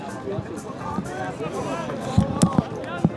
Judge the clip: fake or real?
real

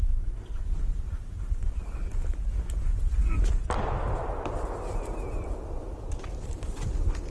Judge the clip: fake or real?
real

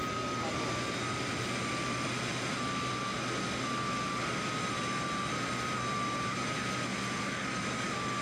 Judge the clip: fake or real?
real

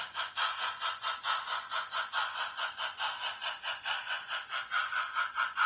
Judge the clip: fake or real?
fake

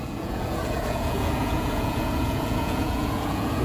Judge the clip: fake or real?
fake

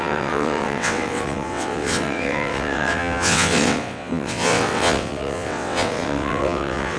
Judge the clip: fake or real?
fake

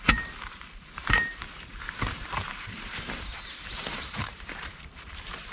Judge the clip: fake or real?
fake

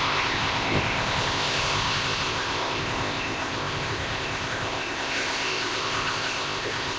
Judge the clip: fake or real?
fake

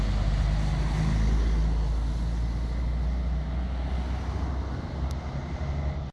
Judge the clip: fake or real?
real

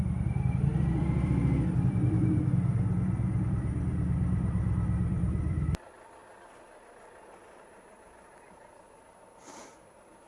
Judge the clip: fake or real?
fake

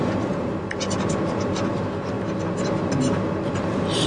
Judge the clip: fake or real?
real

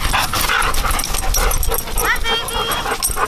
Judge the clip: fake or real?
real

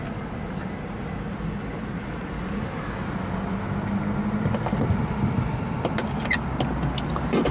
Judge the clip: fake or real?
real